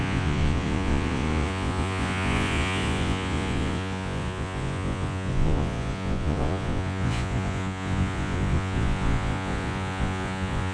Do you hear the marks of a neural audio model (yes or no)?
yes